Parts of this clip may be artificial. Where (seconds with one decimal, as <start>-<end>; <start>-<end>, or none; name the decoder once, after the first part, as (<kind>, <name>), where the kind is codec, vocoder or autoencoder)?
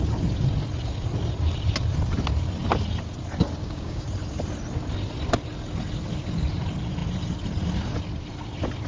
3.6-4.1 (codec, DAC)